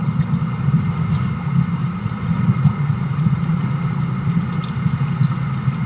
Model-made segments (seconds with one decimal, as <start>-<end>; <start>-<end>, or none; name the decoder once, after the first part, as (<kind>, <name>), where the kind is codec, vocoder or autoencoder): 1.8-4.0 (vocoder, Vocos)